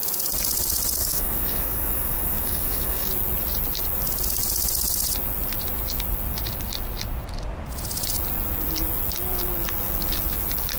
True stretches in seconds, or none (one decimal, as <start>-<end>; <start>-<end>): 0.0-1.0; 3.1-10.8